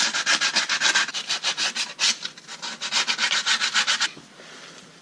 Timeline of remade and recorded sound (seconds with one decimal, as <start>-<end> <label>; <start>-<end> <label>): 0.0-5.0 recorded